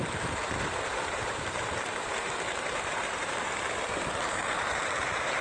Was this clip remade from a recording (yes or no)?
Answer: yes